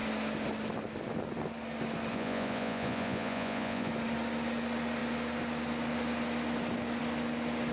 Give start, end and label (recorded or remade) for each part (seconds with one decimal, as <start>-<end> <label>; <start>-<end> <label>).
0.0-2.1 recorded; 2.1-3.9 remade; 3.9-7.7 recorded